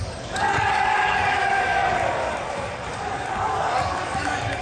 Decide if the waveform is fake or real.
fake